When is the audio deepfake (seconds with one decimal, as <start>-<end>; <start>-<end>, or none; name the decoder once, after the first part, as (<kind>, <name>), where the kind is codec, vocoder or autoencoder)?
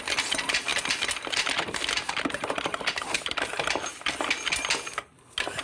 none